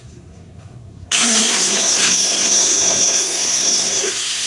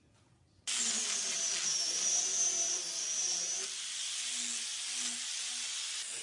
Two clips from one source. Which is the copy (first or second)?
first